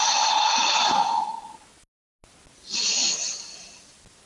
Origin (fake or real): real